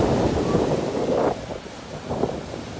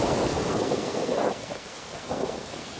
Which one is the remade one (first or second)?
second